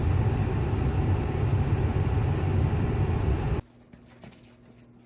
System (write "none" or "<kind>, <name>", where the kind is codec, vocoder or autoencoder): none